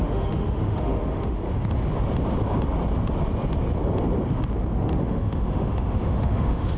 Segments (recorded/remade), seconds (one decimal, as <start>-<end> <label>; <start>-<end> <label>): 0.0-1.4 remade; 1.4-5.0 recorded; 5.0-6.8 remade